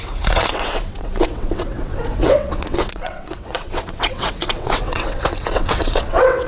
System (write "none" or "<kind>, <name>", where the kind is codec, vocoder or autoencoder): vocoder, WaveNeXt